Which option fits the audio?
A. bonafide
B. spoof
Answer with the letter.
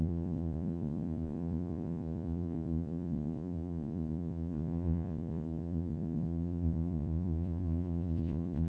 B